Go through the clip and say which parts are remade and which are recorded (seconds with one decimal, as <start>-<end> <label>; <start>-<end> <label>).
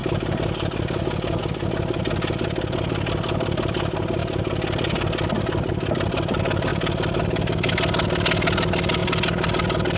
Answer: 0.0-10.0 recorded